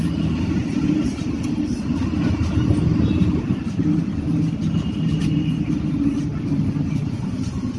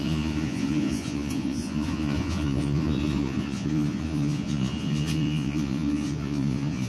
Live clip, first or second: first